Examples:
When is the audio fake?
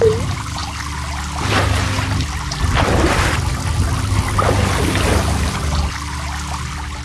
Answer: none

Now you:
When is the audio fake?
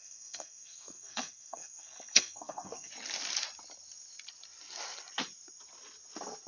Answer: 0.0-2.9 (codec, SNAC)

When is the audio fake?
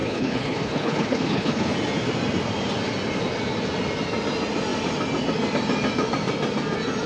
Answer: 0.0-1.7 (codec, HILCodec)